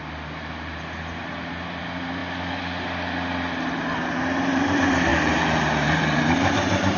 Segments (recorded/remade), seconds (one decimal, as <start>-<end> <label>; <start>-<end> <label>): 0.0-2.2 remade; 2.2-4.1 recorded; 4.1-7.0 remade